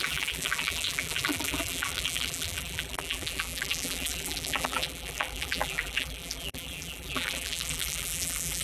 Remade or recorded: remade